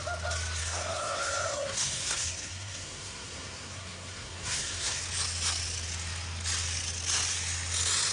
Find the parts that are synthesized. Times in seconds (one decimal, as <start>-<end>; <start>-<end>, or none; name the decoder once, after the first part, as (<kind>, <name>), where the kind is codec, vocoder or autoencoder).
0.6-5.0 (codec, SNAC)